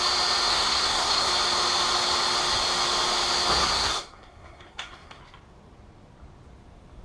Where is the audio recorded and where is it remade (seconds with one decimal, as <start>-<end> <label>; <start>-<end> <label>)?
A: 0.0-0.5 recorded; 0.5-1.3 remade; 1.3-3.6 recorded; 3.6-5.2 remade; 5.2-7.0 recorded